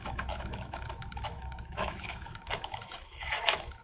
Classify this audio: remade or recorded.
remade